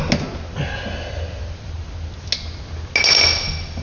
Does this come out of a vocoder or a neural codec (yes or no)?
no